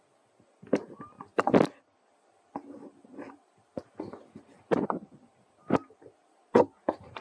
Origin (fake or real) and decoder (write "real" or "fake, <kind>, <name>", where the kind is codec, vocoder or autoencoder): real